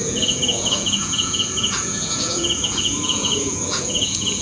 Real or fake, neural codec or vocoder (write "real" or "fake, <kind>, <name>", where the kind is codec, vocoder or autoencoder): fake, vocoder, Vocos